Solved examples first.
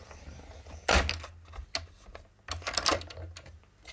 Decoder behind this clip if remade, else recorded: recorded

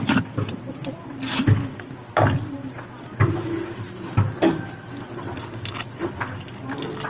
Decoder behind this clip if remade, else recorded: recorded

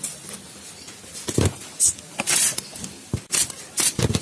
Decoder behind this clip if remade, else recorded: remade, vocoder, BigVGAN v2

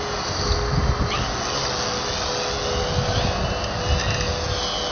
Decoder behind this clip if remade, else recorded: recorded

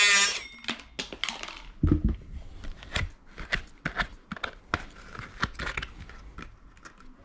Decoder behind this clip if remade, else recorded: recorded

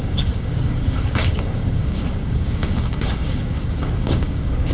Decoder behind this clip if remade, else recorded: remade, codec, DAC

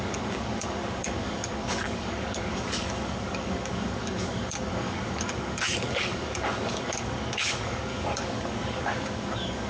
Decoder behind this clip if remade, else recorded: remade, codec, DAC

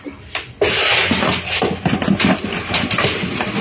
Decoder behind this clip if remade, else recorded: recorded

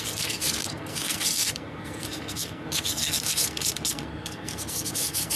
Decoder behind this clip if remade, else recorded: remade, codec, SNAC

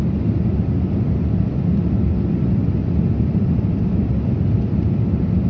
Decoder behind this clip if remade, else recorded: recorded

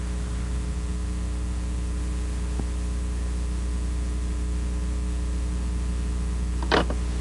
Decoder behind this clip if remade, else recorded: recorded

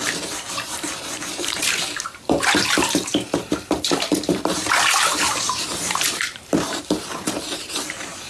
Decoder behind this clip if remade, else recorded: remade, vocoder, BigVGAN v2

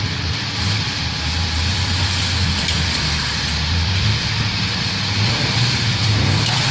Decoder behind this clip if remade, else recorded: remade, vocoder, BigVGAN v2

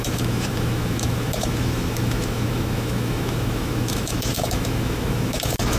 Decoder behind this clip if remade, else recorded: remade, autoencoder, DAC-VAE